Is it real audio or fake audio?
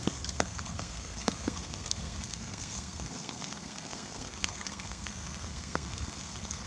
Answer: fake